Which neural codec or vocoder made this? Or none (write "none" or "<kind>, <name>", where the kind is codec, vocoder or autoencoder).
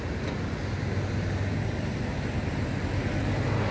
none